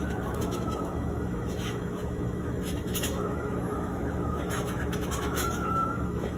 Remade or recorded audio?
remade